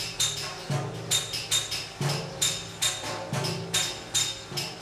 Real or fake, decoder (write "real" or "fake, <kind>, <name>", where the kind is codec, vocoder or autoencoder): real